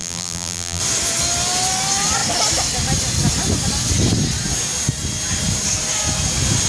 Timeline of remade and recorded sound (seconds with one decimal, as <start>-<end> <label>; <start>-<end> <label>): 0.0-0.8 remade; 0.8-6.7 recorded

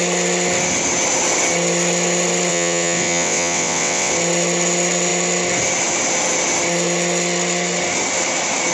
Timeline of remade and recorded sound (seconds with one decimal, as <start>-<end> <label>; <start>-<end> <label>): 0.0-2.5 recorded; 2.5-4.1 remade; 4.1-8.7 recorded